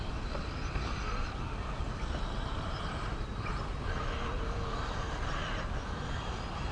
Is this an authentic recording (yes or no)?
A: yes